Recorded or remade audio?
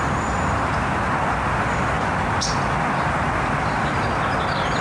recorded